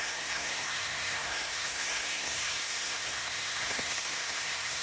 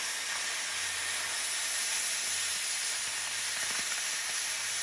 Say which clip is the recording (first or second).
second